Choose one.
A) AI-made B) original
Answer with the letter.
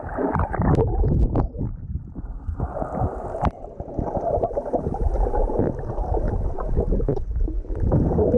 A